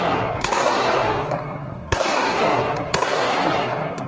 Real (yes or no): no